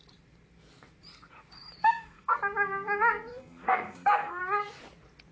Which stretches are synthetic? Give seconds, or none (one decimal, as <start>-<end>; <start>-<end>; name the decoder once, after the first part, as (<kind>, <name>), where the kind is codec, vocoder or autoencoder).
1.8-2.4 (codec, SNAC); 3.3-4.4